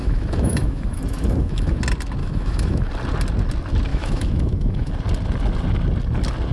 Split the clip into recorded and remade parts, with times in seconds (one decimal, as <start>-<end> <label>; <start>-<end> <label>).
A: 0.0-1.8 remade; 1.8-2.2 recorded; 2.2-2.9 remade; 2.9-3.9 recorded; 3.9-4.9 remade; 4.9-6.5 recorded